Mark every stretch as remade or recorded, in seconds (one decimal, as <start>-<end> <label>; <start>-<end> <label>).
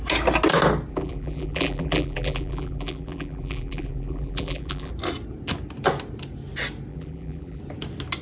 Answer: 0.0-0.9 recorded; 0.9-4.9 remade; 4.9-6.9 recorded; 6.9-7.6 remade; 7.6-8.2 recorded